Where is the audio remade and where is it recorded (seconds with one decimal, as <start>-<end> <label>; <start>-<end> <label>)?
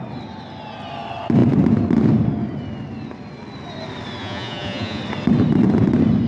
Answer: 0.0-4.2 recorded; 4.2-5.0 remade; 5.0-6.3 recorded